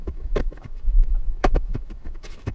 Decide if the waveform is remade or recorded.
remade